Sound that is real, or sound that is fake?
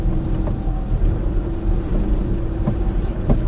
real